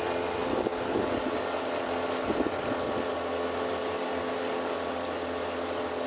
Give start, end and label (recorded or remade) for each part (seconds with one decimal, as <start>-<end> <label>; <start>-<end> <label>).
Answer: 0.0-6.1 recorded